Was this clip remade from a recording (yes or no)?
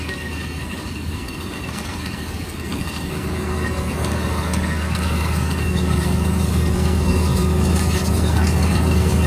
yes